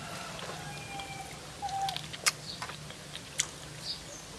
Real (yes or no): yes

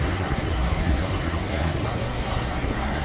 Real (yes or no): no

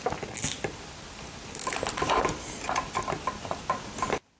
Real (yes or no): yes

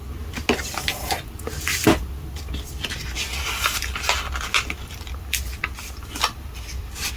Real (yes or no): yes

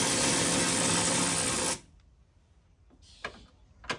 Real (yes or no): yes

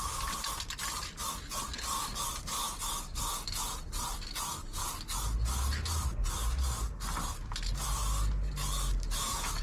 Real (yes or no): yes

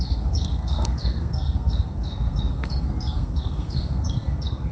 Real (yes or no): no